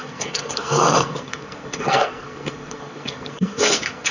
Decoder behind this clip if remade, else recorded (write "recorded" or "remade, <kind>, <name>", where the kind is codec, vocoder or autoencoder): remade, codec, SNAC